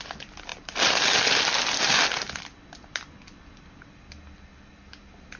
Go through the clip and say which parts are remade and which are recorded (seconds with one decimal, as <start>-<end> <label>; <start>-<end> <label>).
0.0-5.4 recorded